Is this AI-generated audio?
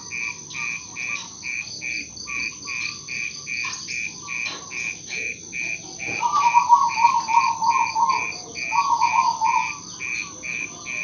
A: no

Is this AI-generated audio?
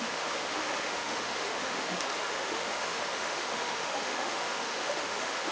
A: yes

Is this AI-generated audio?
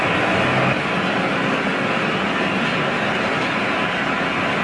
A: no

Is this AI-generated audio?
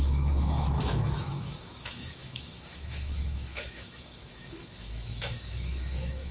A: yes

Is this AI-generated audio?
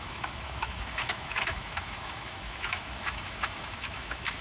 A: yes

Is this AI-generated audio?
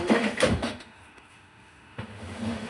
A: yes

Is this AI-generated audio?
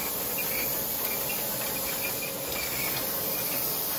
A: no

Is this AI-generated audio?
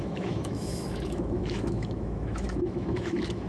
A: yes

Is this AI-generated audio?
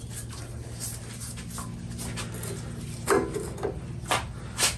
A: no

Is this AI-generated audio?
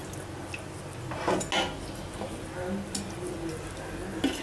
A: no